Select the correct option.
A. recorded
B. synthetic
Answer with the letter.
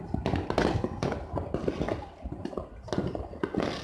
A